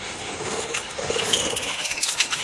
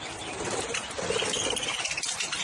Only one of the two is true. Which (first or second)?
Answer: second